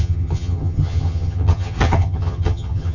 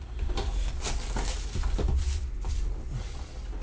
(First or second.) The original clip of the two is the second